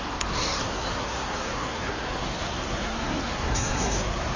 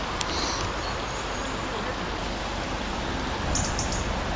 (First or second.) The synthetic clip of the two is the first